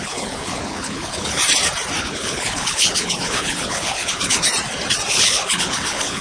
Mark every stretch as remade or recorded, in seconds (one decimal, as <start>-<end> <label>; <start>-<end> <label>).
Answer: 0.0-1.4 remade; 1.4-2.0 recorded; 2.0-4.5 remade; 4.5-5.1 recorded; 5.1-6.2 remade